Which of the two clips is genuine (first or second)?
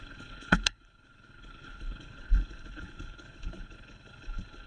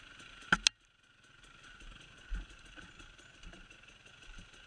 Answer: second